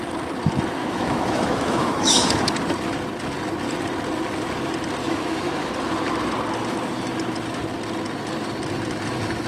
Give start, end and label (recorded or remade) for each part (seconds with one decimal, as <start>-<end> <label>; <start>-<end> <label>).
0.0-0.8 recorded; 0.8-2.5 remade; 2.5-5.0 recorded; 5.0-5.7 remade; 5.7-9.5 recorded